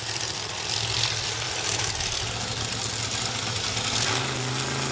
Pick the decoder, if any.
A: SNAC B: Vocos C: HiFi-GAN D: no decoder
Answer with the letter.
D